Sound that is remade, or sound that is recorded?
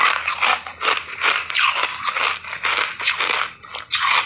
recorded